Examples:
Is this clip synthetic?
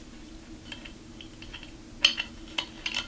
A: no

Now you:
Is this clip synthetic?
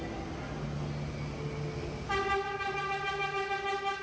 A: no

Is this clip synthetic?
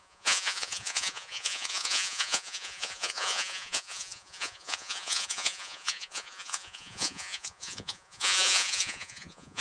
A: yes